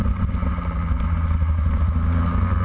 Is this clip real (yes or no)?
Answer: yes